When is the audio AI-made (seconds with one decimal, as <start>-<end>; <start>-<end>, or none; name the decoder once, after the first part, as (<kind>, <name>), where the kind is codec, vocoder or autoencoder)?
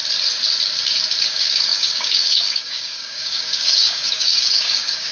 1.2-5.1 (codec, DAC)